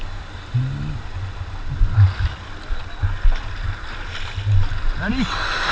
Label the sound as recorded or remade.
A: recorded